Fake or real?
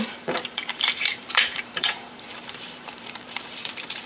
fake